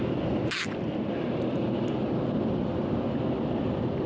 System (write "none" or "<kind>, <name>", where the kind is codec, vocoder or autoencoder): none